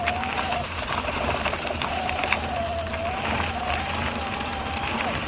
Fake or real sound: fake